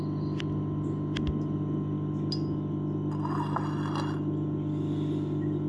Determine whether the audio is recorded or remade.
recorded